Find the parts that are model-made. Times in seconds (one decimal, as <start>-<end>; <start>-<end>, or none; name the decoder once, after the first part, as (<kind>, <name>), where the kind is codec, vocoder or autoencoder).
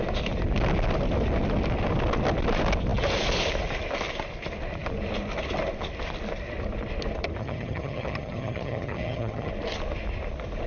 7.4-9.5 (vocoder, HiFi-GAN)